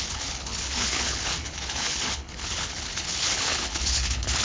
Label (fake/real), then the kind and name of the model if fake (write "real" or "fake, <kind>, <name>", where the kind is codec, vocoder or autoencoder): fake, codec, HILCodec